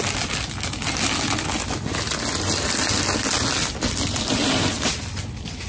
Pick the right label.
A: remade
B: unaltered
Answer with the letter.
B